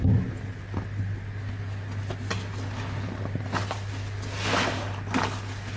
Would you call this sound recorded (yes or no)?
yes